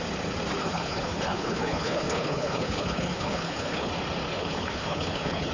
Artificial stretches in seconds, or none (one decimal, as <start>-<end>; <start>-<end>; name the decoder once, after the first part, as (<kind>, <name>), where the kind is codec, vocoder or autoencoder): 0.6-3.9 (codec, HILCodec); 4.3-5.5